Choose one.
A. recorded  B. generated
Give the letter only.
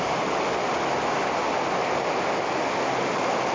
A